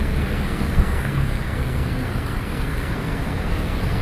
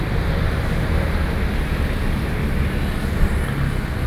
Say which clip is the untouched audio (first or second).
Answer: second